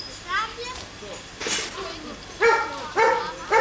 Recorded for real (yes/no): yes